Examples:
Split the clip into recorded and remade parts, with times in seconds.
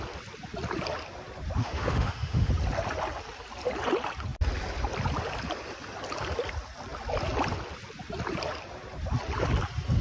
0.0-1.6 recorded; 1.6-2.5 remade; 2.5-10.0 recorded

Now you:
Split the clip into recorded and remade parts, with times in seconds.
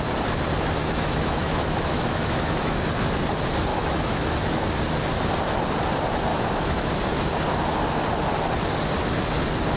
0.0-0.8 recorded; 0.8-2.8 remade; 2.8-3.7 recorded; 3.7-4.6 remade; 4.6-6.3 recorded; 6.3-6.9 remade; 6.9-9.8 recorded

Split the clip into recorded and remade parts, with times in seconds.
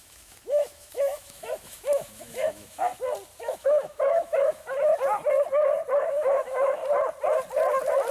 0.0-2.9 remade; 2.9-3.4 recorded; 3.4-4.9 remade; 4.9-6.0 recorded; 6.0-6.8 remade; 6.8-8.1 recorded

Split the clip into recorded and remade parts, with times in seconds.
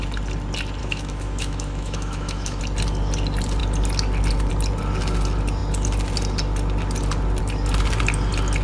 0.0-0.8 recorded; 0.8-2.6 remade; 2.6-8.6 recorded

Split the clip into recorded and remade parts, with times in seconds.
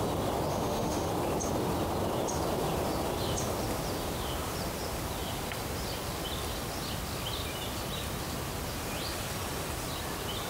0.0-0.5 recorded; 0.5-1.1 remade; 1.1-10.5 recorded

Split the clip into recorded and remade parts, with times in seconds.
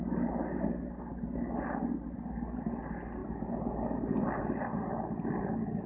0.0-5.9 recorded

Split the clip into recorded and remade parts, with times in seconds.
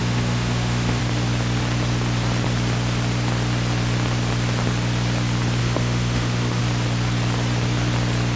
0.0-1.0 remade; 1.0-5.6 recorded; 5.6-6.6 remade; 6.6-8.4 recorded